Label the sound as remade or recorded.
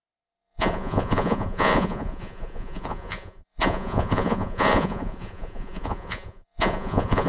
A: remade